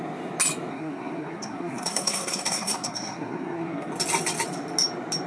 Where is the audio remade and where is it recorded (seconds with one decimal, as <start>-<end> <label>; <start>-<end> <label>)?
0.0-0.7 recorded; 0.7-3.9 remade; 3.9-5.3 recorded